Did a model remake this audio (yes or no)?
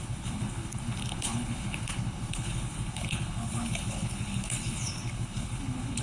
yes